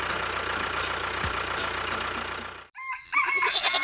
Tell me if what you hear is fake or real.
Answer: real